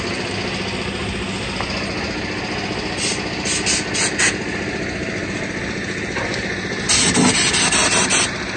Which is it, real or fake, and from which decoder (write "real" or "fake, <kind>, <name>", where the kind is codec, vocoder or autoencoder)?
real